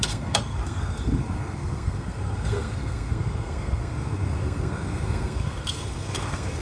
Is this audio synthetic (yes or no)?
yes